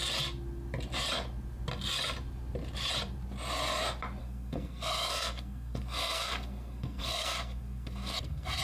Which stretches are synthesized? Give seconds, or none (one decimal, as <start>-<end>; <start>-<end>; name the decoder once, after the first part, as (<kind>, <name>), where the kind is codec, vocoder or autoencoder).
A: 4.2-8.6 (codec, SNAC)